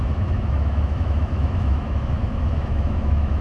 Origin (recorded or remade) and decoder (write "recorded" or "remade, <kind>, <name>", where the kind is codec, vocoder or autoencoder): remade, autoencoder, DAC-VAE